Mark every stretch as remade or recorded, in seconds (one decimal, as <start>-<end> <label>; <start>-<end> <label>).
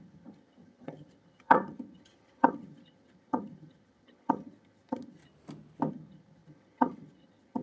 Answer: 0.0-5.2 remade; 5.2-5.9 recorded; 5.9-7.6 remade